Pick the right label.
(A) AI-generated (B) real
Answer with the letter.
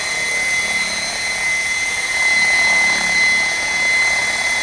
B